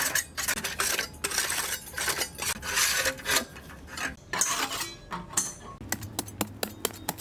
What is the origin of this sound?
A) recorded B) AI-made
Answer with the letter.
A